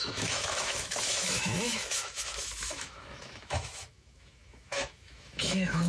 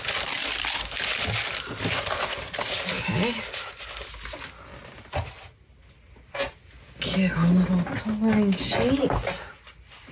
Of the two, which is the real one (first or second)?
second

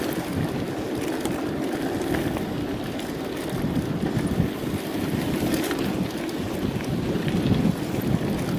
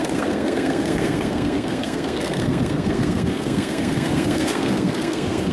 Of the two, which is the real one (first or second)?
first